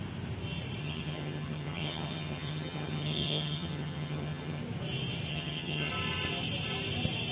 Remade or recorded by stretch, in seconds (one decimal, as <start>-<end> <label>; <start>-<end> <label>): 0.0-0.8 recorded; 0.8-4.6 remade; 4.6-5.3 recorded; 5.3-5.9 remade; 5.9-7.3 recorded